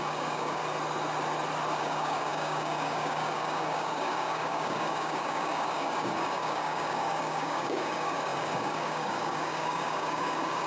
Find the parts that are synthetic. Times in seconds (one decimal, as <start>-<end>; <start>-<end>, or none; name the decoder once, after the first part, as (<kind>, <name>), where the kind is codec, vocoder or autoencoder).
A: 0.0-0.6 (codec, DAC); 1.8-10.7

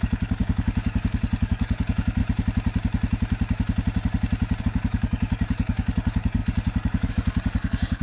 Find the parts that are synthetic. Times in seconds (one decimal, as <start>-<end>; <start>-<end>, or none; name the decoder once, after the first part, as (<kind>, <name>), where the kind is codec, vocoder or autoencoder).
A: 0.0-2.2 (codec, DAC); 4.6-8.0

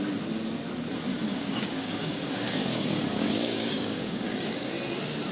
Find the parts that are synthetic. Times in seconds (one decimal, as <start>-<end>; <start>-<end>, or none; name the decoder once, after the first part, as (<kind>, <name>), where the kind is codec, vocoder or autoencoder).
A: 1.1-4.3 (codec, DAC)

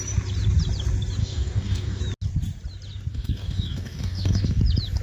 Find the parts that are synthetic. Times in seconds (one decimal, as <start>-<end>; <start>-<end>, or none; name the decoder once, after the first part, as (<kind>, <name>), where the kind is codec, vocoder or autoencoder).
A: 1.2-2.0 (codec, DAC); 3.1-4.6

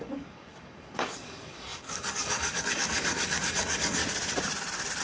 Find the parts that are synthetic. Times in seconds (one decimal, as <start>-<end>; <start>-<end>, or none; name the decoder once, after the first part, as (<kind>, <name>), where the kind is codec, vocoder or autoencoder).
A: 0.0-4.0 (codec, DAC)

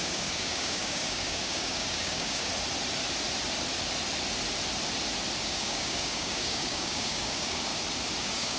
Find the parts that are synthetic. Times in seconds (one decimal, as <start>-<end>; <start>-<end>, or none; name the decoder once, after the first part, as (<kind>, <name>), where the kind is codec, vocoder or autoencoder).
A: 0.0-2.5 (codec, DAC); 5.4-7.7; 8.2-8.6

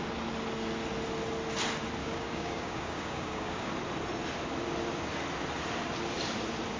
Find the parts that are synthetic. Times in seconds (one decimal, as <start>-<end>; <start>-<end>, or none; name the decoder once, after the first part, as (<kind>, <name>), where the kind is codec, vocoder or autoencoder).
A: 2.0-3.7 (codec, DAC)

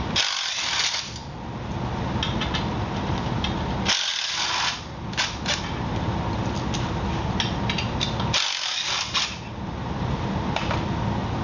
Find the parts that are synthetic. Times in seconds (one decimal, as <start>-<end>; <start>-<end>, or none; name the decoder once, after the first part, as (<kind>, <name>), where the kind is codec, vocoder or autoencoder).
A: none